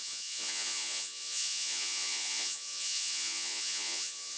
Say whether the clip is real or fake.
fake